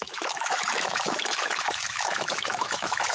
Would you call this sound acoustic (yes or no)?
no